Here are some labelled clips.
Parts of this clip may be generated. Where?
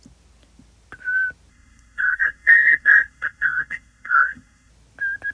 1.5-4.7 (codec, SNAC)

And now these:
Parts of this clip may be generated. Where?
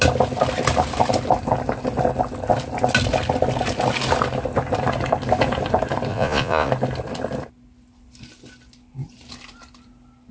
6.1-6.7 (vocoder, Vocos)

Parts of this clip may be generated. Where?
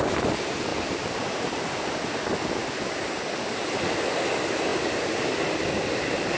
none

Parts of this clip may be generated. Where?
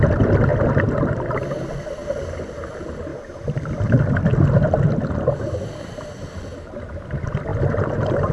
none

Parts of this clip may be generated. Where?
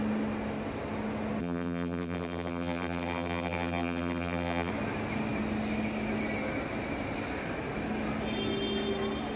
1.4-4.7 (vocoder, BigVGAN v2)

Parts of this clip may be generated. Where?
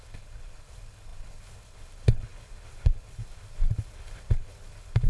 0.0-5.1 (codec, HILCodec)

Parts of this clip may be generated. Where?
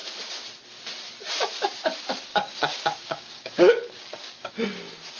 2.3-4.5 (codec, DAC)